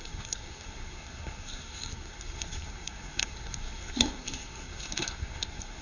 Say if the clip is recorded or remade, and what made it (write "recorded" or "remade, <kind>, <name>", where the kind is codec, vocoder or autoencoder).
remade, codec, SNAC